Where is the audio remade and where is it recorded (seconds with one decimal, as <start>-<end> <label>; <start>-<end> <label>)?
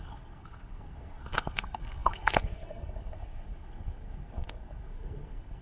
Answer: 0.0-5.6 remade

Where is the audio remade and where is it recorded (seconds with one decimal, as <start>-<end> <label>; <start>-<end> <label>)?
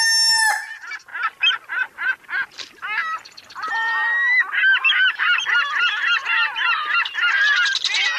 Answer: 0.0-8.2 recorded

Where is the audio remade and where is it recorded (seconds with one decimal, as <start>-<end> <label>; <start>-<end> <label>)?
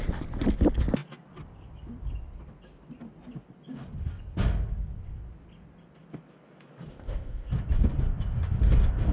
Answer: 0.0-6.9 recorded; 6.9-7.5 remade; 7.5-9.1 recorded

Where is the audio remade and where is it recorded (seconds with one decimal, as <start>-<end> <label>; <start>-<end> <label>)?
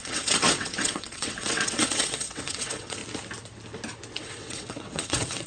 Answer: 0.0-3.0 remade; 3.0-4.2 recorded; 4.2-5.5 remade